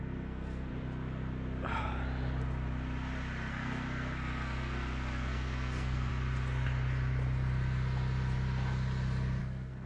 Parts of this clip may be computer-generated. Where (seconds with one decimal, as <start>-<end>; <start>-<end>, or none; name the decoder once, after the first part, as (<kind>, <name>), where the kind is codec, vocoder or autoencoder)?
0.0-0.7 (codec, SNAC); 3.5-6.1; 9.4-9.9